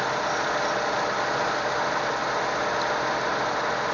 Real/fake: real